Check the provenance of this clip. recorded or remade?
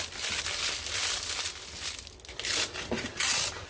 recorded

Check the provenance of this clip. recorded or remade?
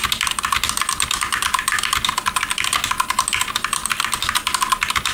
recorded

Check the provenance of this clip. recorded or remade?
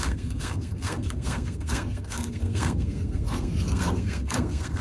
remade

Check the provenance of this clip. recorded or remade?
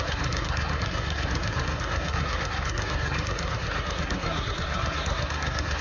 remade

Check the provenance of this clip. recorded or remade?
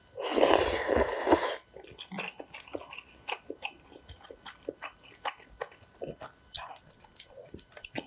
recorded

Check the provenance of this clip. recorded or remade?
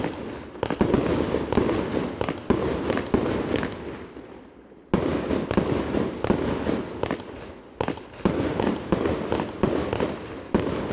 recorded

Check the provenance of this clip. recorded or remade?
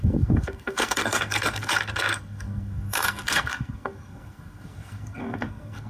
remade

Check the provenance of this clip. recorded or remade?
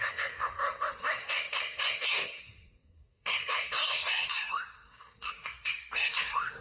remade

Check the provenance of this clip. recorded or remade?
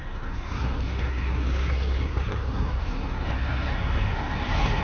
remade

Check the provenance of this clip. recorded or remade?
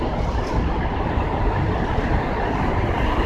recorded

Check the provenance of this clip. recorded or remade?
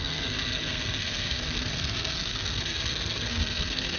remade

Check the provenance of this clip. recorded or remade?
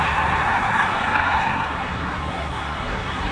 remade